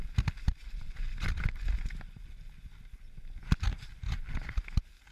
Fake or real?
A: real